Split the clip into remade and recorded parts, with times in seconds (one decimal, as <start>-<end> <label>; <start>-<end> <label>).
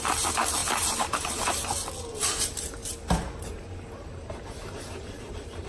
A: 0.0-1.6 remade; 1.6-2.3 recorded; 2.3-5.7 remade